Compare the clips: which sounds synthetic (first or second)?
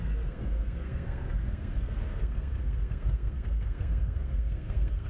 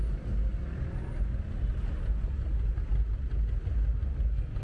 first